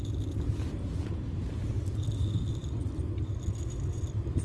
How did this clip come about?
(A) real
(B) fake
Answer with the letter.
A